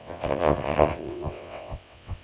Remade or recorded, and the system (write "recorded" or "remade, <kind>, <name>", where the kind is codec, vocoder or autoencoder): remade, vocoder, WaveNeXt